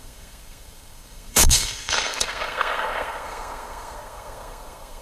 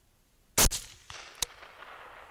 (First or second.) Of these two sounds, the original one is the second